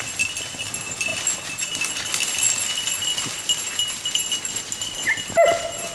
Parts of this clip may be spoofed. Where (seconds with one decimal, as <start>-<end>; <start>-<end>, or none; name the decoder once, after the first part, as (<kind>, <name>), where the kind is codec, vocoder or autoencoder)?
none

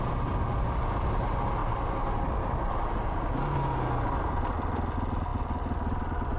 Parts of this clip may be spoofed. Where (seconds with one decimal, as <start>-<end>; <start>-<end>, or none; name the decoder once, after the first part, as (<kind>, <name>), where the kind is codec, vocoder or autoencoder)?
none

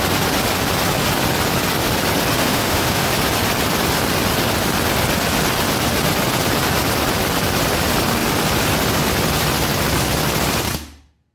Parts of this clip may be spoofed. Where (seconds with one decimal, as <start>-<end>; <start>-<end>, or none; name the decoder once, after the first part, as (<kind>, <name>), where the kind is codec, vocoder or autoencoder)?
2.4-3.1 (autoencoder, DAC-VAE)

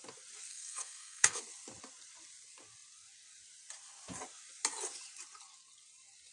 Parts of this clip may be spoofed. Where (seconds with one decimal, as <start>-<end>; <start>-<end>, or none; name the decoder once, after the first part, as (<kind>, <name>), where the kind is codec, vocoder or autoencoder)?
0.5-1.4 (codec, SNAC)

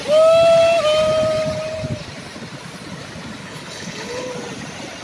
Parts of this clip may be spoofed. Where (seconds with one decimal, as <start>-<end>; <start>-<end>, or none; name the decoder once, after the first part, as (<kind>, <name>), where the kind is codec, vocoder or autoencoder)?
3.4-4.3 (codec, HILCodec)

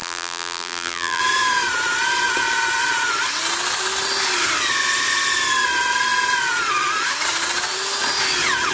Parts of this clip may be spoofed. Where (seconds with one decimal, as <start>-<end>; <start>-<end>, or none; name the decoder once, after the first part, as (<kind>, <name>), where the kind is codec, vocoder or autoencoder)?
0.0-1.2 (vocoder, BigVGAN v2)

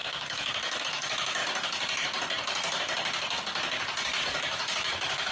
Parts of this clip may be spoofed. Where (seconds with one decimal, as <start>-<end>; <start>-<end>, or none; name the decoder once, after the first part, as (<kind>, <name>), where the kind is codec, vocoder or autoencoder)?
0.0-1.4 (autoencoder, DAC-VAE); 4.2-5.3

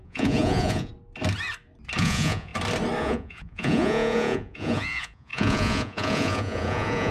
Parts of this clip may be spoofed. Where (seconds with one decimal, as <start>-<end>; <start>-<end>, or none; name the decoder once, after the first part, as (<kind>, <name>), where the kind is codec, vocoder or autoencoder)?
0.0-0.9 (vocoder, Vocos); 2.0-2.5; 3.0-7.1